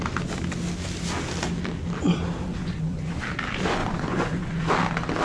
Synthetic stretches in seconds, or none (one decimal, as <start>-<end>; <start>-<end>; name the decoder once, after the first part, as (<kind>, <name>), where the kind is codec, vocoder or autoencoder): 2.5-3.1 (vocoder, Vocos); 3.8-4.7